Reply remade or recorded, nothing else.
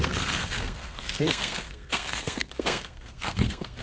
remade